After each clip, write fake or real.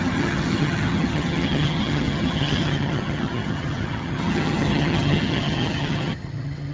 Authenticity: fake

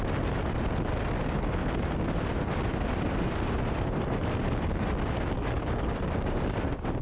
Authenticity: real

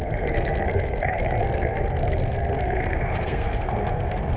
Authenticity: fake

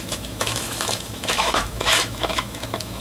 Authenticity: fake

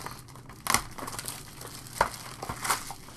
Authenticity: real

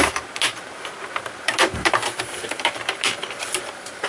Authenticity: fake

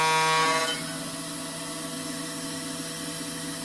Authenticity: real